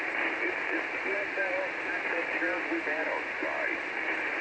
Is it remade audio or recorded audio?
recorded